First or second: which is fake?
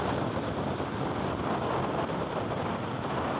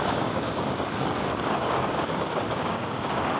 second